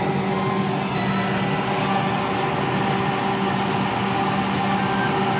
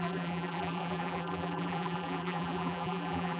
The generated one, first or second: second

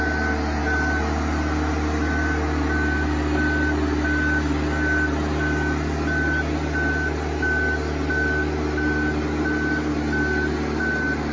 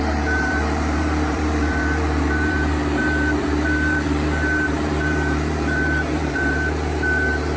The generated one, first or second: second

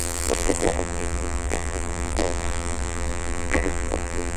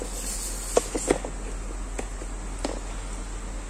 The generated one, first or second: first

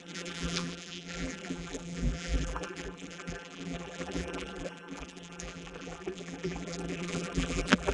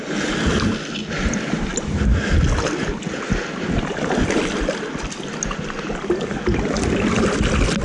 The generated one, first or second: first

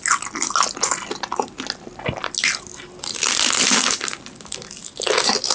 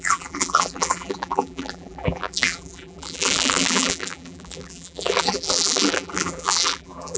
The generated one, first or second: second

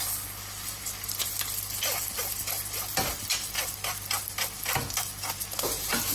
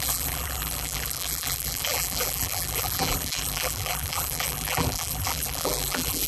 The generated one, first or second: second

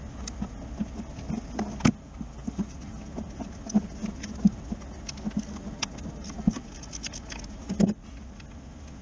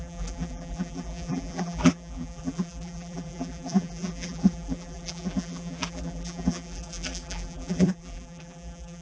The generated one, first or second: second